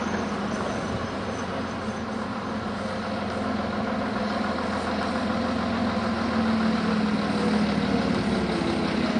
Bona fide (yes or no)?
yes